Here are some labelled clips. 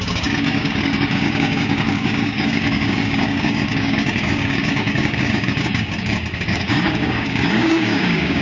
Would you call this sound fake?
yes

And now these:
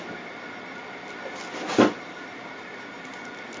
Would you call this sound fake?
no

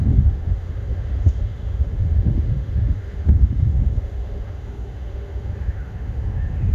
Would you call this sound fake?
yes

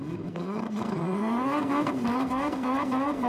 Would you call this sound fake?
yes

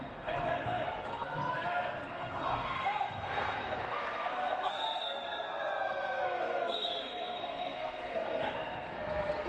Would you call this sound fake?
yes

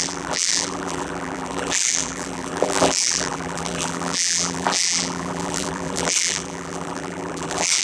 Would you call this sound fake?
yes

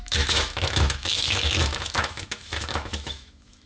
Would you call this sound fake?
yes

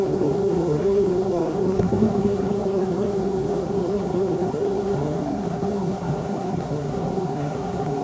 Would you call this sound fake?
yes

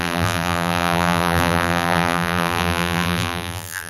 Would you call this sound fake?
yes